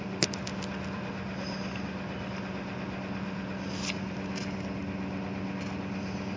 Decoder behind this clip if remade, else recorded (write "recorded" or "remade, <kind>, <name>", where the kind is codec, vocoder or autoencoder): recorded